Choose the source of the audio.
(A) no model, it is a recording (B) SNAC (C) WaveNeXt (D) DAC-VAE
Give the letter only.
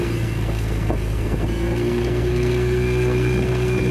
B